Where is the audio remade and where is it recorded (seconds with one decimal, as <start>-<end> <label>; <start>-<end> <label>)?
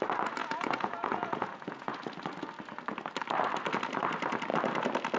0.0-0.4 recorded; 0.4-2.0 remade; 2.0-5.2 recorded